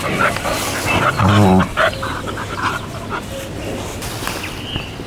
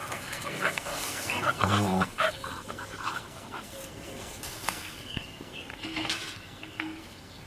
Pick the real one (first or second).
first